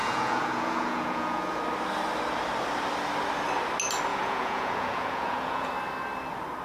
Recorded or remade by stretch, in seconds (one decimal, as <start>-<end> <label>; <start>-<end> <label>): 0.0-1.6 remade; 1.6-4.1 recorded; 4.1-5.7 remade; 5.7-6.6 recorded